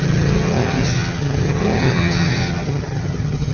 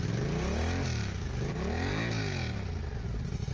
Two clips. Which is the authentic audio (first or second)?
second